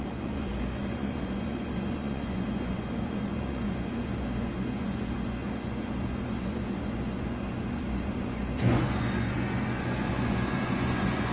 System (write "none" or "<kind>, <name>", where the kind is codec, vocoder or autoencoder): vocoder, Vocos